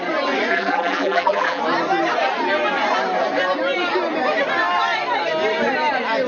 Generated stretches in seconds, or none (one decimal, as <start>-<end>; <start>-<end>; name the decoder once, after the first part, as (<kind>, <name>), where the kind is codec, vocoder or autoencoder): 0.5-1.6 (vocoder, BigVGAN v2)